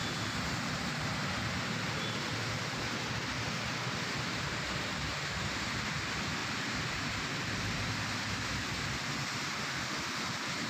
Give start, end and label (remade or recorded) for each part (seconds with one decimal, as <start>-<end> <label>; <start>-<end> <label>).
0.0-10.7 recorded